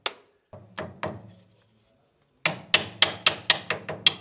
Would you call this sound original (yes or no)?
yes